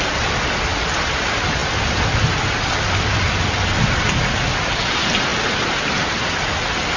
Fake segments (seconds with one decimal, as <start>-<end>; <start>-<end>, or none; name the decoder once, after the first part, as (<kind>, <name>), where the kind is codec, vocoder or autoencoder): none